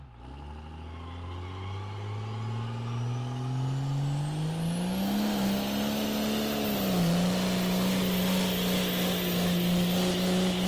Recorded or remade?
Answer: recorded